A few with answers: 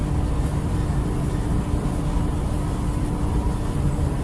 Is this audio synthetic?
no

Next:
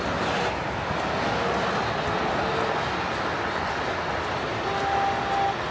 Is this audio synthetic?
no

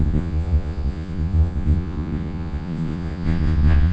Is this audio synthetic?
yes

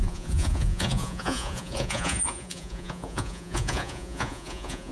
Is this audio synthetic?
yes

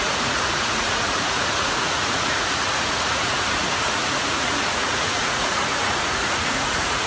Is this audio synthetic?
yes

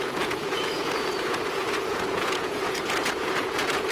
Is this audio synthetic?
yes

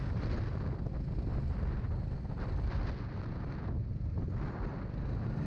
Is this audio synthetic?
no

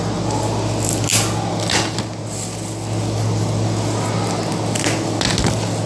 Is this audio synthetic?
no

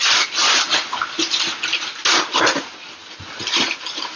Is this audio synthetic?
no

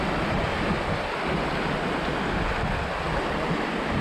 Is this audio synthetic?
no